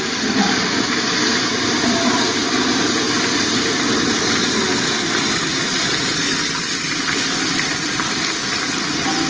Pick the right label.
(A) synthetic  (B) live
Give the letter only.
A